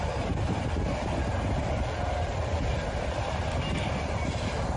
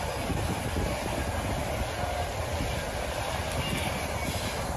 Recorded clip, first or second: second